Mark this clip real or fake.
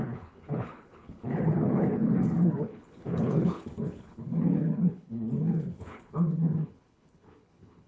fake